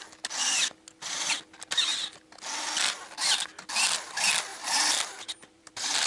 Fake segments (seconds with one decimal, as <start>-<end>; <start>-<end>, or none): 4.5-6.1